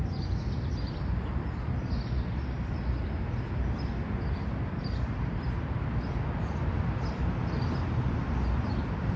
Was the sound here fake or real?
real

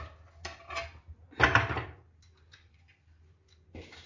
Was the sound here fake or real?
real